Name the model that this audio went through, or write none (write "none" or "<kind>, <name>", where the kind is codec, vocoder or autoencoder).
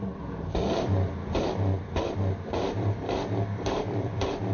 vocoder, BigVGAN v2